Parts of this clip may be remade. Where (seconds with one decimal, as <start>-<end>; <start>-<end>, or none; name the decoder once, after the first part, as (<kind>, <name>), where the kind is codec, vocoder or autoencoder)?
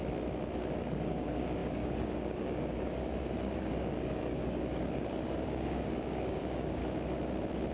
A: 0.8-6.8 (codec, DAC)